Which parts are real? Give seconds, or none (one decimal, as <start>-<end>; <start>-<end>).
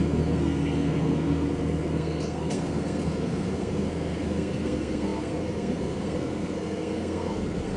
none